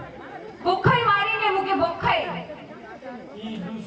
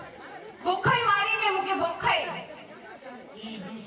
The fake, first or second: second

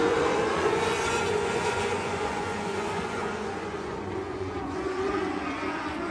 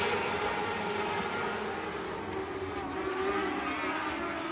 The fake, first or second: first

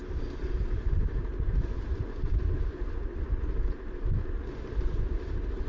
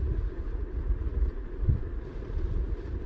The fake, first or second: second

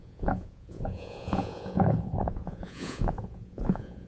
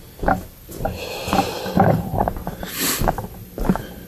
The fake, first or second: first